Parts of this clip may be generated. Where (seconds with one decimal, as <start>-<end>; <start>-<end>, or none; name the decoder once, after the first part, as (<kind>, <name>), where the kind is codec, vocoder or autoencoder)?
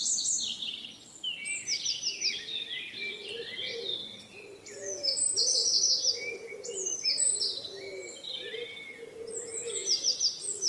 none